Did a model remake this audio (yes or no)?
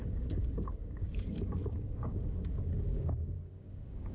yes